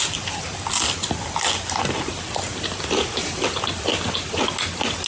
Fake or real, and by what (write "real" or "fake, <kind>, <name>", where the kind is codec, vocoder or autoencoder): real